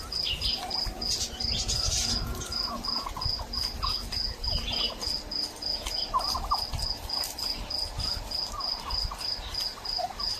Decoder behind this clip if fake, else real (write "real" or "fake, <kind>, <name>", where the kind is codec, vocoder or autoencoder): real